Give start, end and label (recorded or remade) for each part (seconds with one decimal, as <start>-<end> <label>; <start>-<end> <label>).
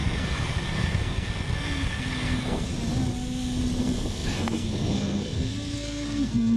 0.0-2.7 remade; 2.7-3.8 recorded; 3.8-6.6 remade